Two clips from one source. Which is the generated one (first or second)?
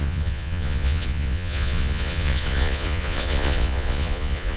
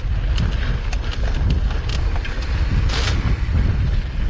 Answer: first